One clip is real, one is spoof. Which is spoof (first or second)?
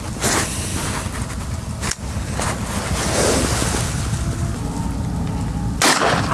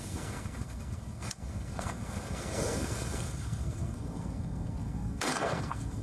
second